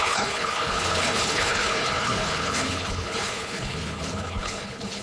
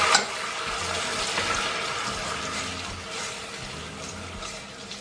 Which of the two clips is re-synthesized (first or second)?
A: first